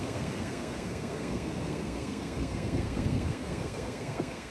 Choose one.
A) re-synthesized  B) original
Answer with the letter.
A